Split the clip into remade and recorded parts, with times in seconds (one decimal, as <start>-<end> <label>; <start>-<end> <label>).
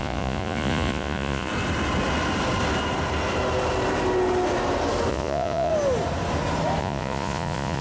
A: 0.0-1.5 remade; 1.5-5.1 recorded; 5.1-5.7 remade; 5.7-6.8 recorded; 6.8-7.8 remade